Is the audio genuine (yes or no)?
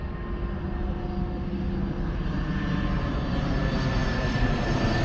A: yes